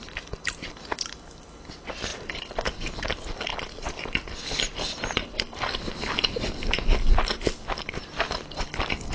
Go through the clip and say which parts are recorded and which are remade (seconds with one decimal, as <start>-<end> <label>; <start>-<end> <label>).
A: 0.0-9.1 recorded